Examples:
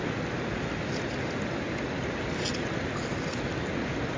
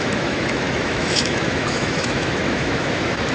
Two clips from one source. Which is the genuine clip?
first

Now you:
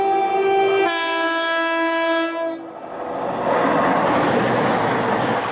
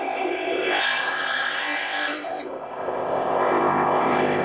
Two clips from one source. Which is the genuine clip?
first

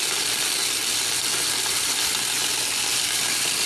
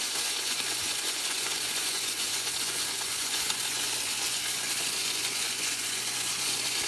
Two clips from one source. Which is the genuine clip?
first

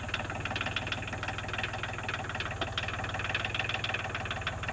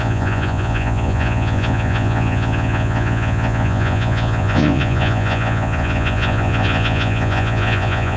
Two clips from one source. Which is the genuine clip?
first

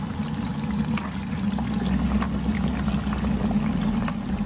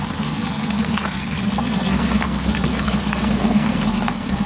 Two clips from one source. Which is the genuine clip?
first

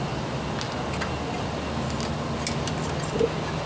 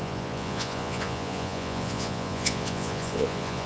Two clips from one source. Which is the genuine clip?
first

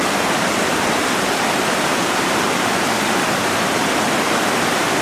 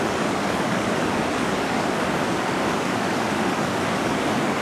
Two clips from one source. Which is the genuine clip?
first